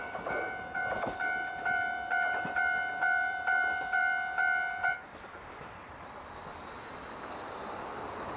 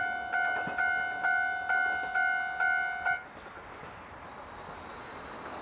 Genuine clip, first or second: second